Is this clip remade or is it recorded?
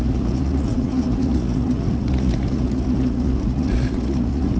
remade